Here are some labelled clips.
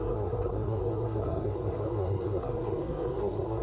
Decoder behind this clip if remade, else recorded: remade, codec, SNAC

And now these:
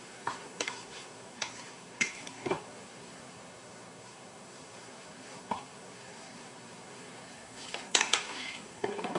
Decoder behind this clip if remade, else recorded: remade, codec, SNAC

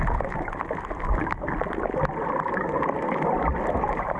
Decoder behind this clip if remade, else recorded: recorded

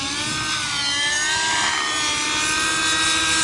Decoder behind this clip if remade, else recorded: recorded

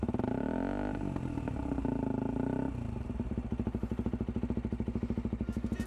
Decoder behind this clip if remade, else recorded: recorded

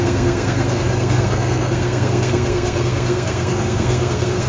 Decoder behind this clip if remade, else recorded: remade, codec, SNAC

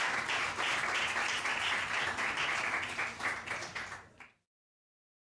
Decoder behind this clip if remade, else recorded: recorded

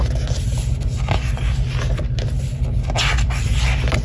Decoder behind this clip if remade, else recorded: recorded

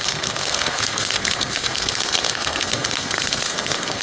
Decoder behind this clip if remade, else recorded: remade, codec, SNAC